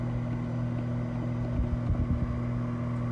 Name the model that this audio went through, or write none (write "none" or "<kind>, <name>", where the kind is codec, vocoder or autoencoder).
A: none